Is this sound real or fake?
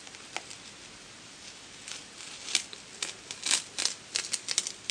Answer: real